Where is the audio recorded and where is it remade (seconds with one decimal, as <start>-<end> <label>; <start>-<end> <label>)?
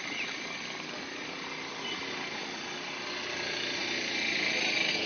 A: 0.0-5.1 recorded